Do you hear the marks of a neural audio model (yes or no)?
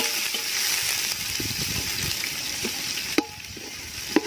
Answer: yes